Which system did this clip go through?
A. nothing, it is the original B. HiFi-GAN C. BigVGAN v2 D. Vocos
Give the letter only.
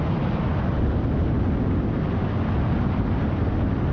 A